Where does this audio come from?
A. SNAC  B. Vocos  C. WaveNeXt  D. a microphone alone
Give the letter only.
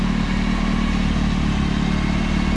D